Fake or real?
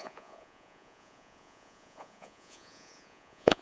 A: fake